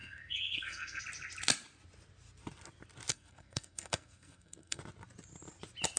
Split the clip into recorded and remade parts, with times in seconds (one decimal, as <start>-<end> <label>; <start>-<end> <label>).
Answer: 0.0-1.0 remade; 1.0-3.1 recorded; 3.1-4.8 remade; 4.8-6.0 recorded